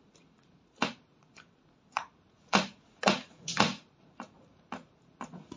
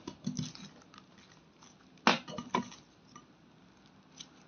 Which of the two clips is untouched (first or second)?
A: second